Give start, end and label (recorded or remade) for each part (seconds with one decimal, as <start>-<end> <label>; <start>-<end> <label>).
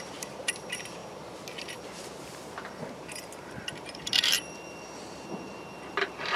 0.0-1.0 remade; 1.0-1.6 recorded; 1.6-6.4 remade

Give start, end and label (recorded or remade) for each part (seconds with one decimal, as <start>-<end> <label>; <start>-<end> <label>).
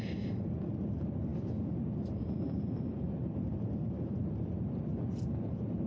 0.0-2.2 recorded; 2.2-5.9 remade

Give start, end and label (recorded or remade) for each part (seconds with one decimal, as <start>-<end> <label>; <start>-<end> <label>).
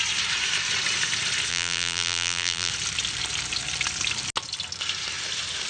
0.0-1.5 recorded; 1.5-2.7 remade; 2.7-5.7 recorded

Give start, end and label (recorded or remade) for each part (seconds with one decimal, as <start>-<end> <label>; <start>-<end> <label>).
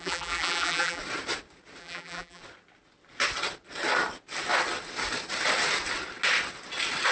0.0-1.0 remade; 1.0-1.8 recorded; 1.8-2.4 remade; 2.4-7.1 recorded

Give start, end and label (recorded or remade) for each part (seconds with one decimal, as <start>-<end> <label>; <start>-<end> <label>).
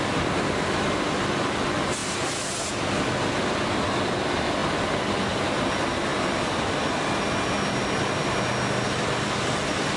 0.0-10.0 recorded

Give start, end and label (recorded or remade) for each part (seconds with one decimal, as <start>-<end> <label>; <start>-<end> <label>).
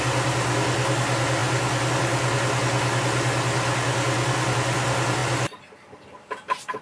0.0-5.2 recorded; 5.2-6.0 remade; 6.0-6.8 recorded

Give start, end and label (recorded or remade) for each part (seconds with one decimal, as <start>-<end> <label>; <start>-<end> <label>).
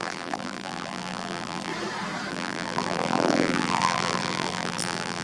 0.0-1.7 remade; 1.7-2.3 recorded; 2.3-5.2 remade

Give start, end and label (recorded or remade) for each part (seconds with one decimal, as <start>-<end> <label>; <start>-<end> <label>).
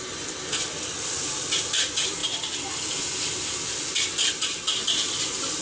0.0-5.6 recorded